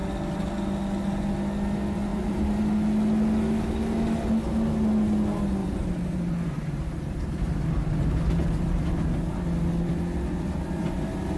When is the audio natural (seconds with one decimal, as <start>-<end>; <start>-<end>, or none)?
0.0-2.1; 2.6-5.6; 8.9-11.4